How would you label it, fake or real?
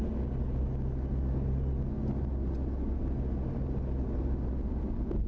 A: real